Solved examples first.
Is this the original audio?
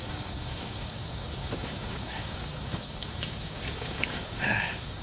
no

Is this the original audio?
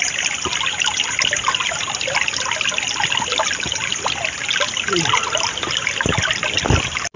yes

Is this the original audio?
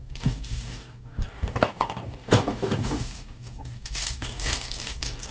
no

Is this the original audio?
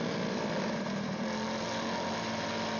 yes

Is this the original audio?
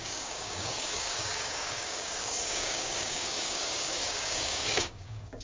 no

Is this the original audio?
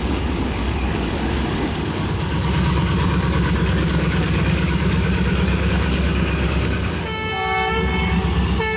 no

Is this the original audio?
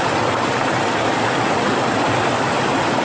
yes